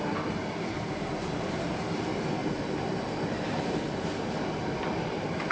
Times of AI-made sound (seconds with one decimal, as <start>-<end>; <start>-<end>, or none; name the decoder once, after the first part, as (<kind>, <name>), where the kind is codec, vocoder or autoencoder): 0.0-5.5 (vocoder, BigVGAN v2)